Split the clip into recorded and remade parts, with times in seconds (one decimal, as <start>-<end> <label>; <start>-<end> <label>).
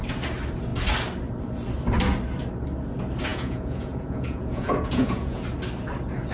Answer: 0.0-3.3 recorded; 3.3-5.4 remade; 5.4-6.3 recorded